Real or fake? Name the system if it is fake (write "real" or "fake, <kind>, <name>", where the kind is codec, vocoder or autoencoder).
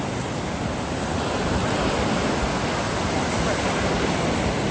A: real